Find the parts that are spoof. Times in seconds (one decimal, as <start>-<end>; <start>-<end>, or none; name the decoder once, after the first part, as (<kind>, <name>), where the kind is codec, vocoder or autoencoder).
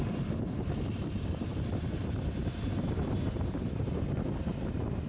0.0-1.5 (vocoder, BigVGAN v2); 2.3-5.1